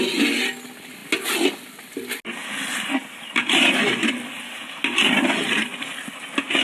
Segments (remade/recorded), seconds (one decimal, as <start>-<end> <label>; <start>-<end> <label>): 0.0-2.4 recorded; 2.4-4.8 remade; 4.8-6.6 recorded